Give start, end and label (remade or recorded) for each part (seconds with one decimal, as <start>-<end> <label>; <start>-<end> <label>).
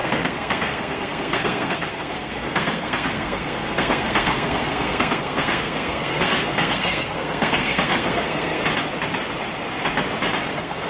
0.0-8.6 remade; 8.6-10.5 recorded; 10.5-10.9 remade